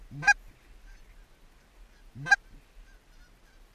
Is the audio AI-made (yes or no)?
no